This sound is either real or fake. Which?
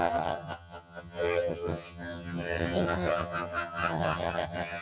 fake